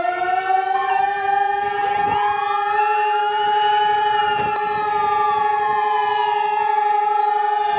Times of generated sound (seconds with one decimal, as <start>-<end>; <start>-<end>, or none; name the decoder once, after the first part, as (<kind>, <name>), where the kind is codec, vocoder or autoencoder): 0.0-7.8 (vocoder, BigVGAN v2)